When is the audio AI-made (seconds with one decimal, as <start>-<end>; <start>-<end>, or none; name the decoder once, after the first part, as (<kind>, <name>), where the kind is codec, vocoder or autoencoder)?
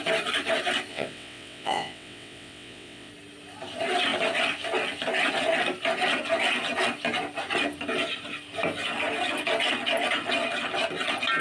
0.9-3.1 (vocoder, WaveNeXt)